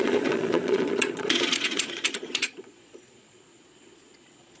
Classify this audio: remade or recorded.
remade